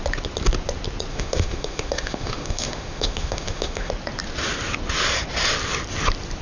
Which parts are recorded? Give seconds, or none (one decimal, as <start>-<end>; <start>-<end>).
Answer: 0.0-1.1; 3.9-6.4